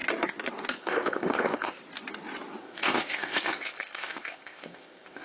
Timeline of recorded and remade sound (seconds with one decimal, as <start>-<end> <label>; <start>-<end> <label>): 0.0-0.8 recorded; 0.8-1.8 remade; 1.8-2.6 recorded; 2.6-5.2 remade